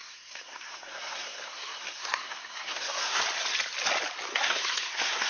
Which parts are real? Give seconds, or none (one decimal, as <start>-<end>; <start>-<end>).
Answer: 3.2-4.3